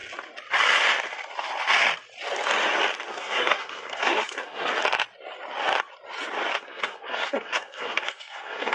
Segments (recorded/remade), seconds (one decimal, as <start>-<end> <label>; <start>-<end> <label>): 0.0-3.1 recorded; 3.1-4.7 remade; 4.7-6.6 recorded; 6.6-8.7 remade